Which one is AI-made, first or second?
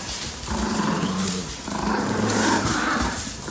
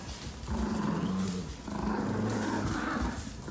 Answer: first